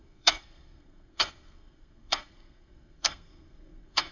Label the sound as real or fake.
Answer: fake